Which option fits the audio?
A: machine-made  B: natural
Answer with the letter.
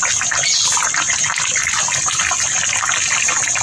B